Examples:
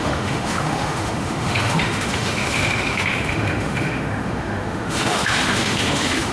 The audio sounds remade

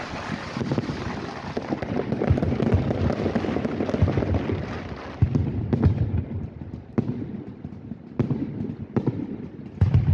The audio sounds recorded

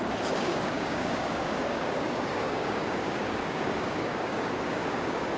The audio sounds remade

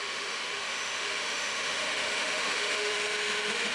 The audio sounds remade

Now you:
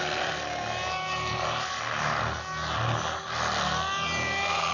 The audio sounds recorded